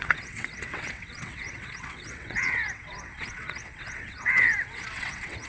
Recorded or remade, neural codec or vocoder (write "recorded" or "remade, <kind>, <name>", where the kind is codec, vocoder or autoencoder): remade, vocoder, WaveNeXt